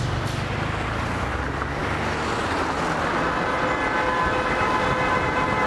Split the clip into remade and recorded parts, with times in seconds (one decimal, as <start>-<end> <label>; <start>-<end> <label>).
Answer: 0.0-5.7 recorded